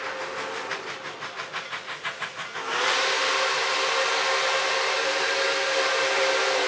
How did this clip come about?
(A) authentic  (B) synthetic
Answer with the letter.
A